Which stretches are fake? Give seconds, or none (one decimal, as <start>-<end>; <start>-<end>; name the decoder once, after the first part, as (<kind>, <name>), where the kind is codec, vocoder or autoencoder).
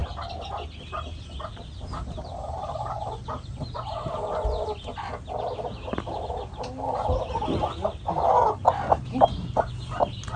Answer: 1.5-4.1 (vocoder, BigVGAN v2)